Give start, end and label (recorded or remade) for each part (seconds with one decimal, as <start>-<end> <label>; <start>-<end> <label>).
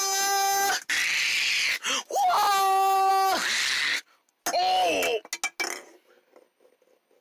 0.0-7.2 recorded